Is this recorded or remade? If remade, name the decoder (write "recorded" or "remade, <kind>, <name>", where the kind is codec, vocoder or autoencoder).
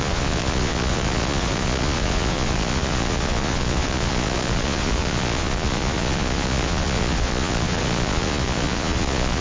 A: remade, vocoder, Vocos